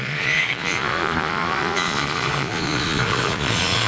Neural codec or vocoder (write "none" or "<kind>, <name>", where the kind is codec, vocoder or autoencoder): vocoder, Vocos